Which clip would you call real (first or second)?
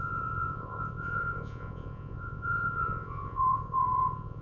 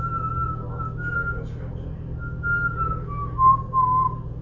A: second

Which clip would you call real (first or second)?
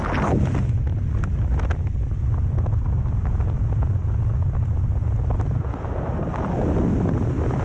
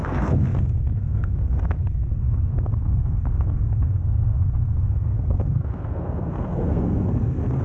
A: first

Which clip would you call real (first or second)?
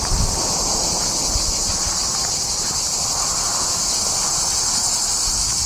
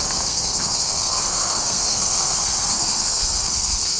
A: first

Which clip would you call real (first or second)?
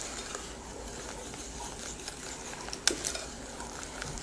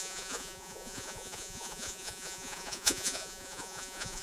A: first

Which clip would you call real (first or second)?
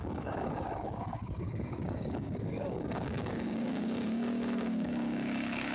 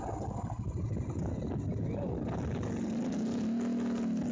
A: second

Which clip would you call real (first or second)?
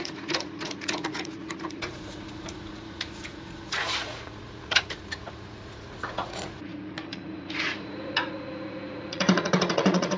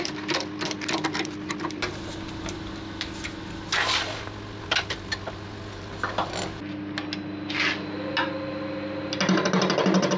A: second